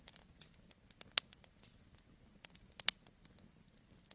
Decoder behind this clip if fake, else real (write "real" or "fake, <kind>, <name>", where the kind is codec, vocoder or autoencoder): real